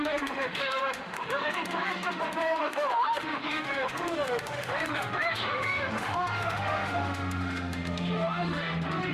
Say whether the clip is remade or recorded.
remade